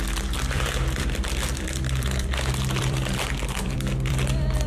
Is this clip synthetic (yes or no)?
yes